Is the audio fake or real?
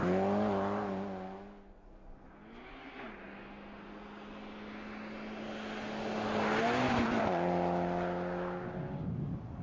real